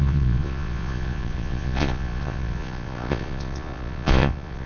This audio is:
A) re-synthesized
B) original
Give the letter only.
A